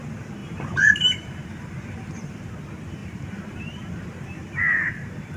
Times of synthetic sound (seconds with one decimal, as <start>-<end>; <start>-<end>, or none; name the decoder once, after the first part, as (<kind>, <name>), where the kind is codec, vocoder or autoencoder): 0.4-2.5 (vocoder, BigVGAN v2); 3.0-5.4

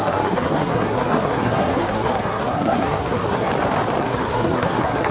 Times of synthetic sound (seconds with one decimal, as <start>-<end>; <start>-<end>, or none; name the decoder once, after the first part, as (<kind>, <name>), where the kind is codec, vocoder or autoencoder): 0.0-3.5 (codec, SNAC); 4.0-5.1

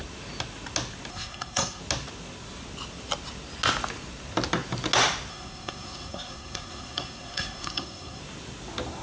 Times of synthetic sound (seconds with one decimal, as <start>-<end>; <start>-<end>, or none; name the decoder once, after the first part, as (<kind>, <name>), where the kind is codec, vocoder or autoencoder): 1.1-1.8 (codec, SNAC); 5.3-8.2

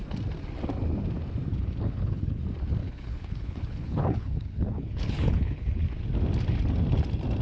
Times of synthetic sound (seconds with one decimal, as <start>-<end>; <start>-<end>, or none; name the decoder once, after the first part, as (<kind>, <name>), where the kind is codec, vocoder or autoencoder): 1.5-2.4 (codec, HILCodec); 2.8-5.8

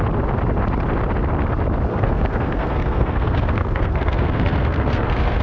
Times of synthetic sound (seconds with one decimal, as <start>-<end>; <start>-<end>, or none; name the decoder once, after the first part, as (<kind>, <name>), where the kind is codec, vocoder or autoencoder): 1.9-5.4 (codec, SNAC)